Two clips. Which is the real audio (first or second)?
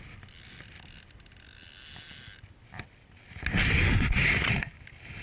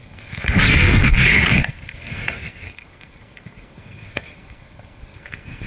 first